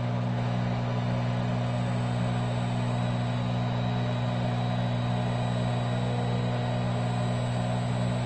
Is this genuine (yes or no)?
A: yes